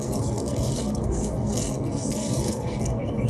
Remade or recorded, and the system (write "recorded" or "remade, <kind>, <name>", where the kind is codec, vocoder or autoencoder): remade, codec, SNAC